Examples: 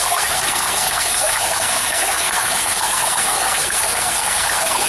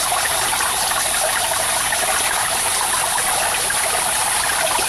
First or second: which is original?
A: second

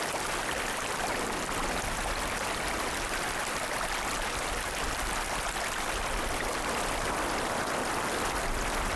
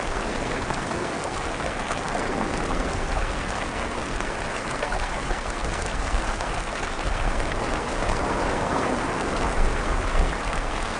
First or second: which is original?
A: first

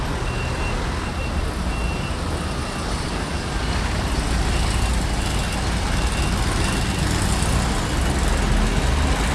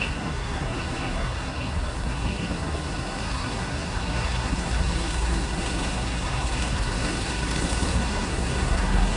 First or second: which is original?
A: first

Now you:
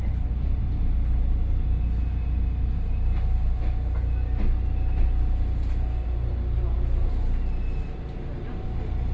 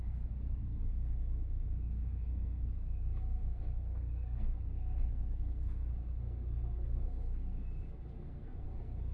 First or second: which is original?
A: first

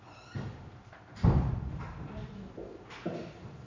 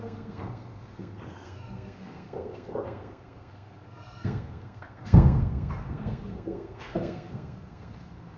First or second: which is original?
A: first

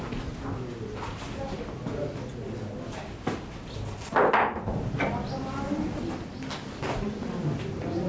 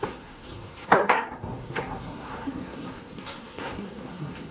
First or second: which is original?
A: first